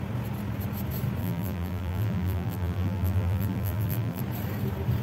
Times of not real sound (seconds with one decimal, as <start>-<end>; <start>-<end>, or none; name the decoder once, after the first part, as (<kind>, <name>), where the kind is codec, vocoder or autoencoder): 1.2-4.2 (vocoder, BigVGAN v2)